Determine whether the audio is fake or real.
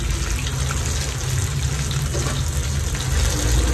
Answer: real